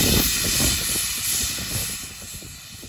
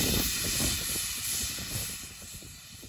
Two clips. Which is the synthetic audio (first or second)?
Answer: second